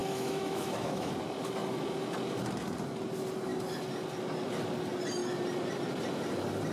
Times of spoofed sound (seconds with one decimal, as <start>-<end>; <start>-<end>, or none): 0.0-1.1